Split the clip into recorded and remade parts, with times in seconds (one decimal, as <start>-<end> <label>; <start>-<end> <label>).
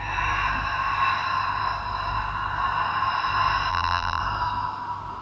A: 0.0-3.7 recorded; 3.7-4.2 remade; 4.2-5.2 recorded